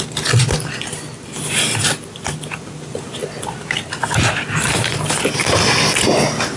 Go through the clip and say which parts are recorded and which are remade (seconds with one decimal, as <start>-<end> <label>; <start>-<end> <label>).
0.0-6.6 recorded